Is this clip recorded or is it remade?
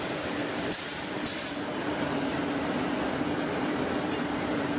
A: remade